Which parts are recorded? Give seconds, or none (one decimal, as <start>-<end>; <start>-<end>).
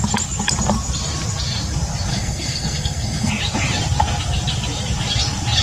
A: 0.0-2.1; 3.3-5.6